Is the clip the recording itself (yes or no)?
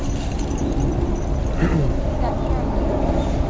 yes